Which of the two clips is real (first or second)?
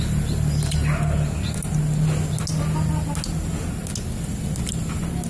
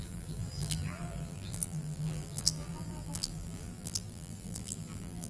first